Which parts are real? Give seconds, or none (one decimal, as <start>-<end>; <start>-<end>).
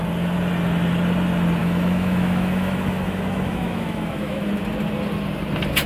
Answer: 0.0-1.6; 4.5-5.9